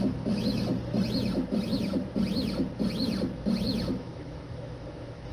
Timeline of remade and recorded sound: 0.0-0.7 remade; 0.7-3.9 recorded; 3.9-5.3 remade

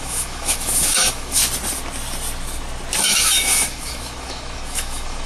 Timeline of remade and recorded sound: 0.0-1.4 remade; 1.4-3.0 recorded; 3.0-5.3 remade

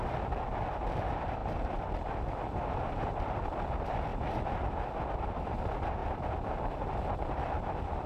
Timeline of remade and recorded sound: 0.0-8.1 recorded

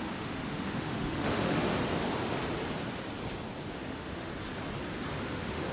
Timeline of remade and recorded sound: 0.0-1.7 remade; 1.7-3.7 recorded; 3.7-4.3 remade; 4.3-5.1 recorded; 5.1-5.7 remade

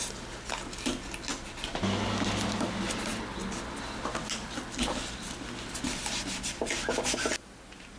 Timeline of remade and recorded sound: 0.0-8.0 recorded

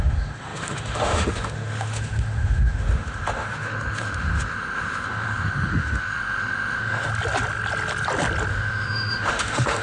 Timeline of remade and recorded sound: 0.0-7.1 remade; 7.1-8.5 recorded; 8.5-9.8 remade

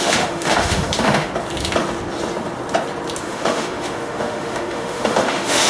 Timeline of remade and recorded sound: 0.0-1.3 remade; 1.3-3.2 recorded; 3.2-5.7 remade